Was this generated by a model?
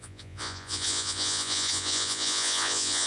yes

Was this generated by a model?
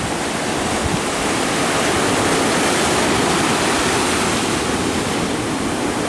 no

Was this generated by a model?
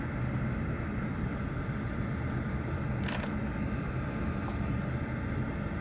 no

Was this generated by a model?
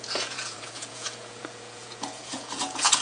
yes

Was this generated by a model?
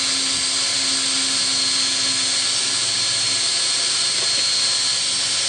no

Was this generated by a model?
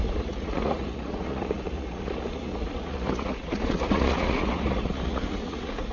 yes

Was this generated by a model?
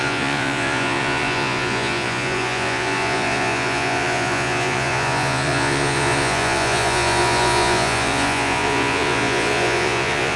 yes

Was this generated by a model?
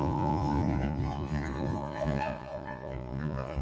yes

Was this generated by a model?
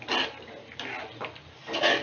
no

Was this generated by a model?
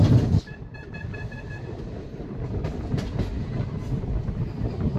no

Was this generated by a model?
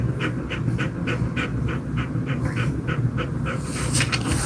no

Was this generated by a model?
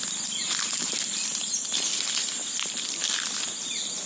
no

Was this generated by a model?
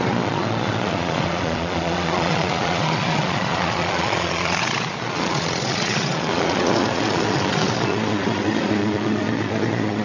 yes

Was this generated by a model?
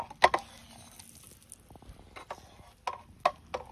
no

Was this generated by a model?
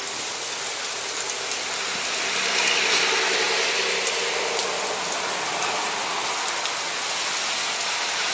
no